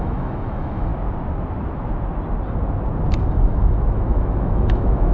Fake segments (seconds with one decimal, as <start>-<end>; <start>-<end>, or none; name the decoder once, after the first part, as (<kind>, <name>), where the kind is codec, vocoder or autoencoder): 0.0-0.9 (autoencoder, DAC-VAE); 3.3-5.1